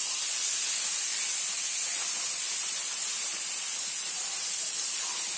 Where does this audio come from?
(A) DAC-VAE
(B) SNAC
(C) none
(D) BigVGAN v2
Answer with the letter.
C